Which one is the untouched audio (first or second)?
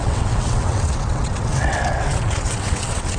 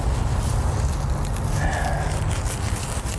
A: second